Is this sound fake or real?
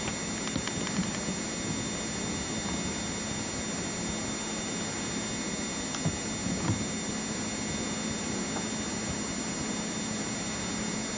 real